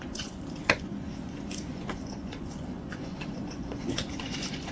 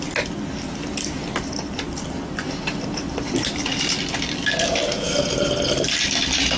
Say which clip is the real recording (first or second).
second